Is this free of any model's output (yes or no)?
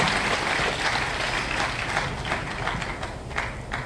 yes